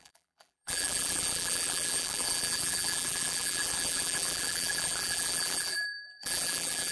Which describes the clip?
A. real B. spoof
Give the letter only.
B